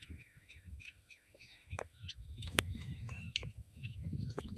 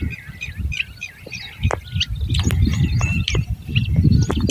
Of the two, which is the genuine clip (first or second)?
second